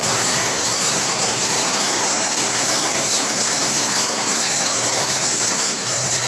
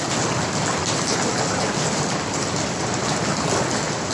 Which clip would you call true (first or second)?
second